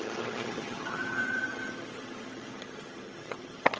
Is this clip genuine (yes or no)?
no